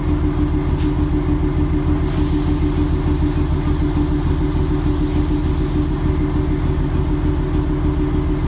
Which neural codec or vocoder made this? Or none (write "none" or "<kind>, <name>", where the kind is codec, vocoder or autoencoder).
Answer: none